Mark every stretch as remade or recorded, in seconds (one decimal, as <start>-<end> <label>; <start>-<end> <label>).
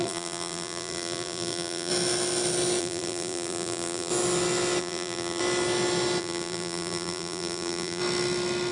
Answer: 0.0-1.9 remade; 1.9-2.8 recorded; 2.8-4.1 remade; 4.1-4.8 recorded; 4.8-5.4 remade; 5.4-6.2 recorded; 6.2-8.0 remade; 8.0-8.7 recorded